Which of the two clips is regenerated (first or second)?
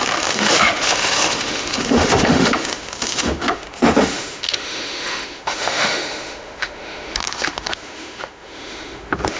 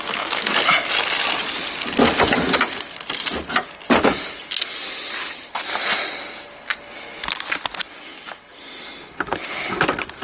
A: first